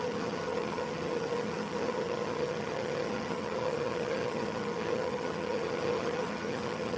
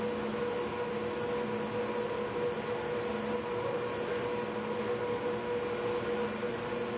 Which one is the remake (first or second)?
first